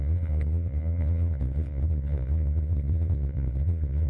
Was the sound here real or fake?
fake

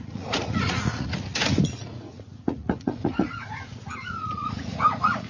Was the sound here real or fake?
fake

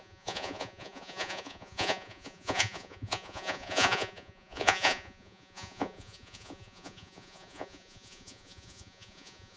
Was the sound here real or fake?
fake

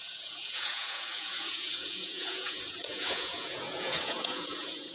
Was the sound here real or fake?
fake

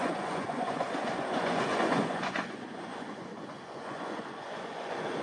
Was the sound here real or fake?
fake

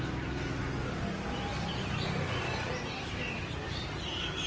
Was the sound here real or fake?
real